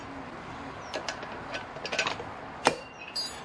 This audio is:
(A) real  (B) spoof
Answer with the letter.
A